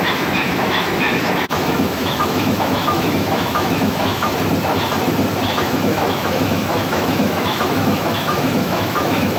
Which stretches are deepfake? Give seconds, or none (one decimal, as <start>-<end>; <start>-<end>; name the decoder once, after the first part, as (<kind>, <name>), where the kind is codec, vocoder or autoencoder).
0.0-4.3 (autoencoder, DAC-VAE); 5.5-9.4